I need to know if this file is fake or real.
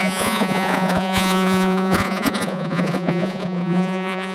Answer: fake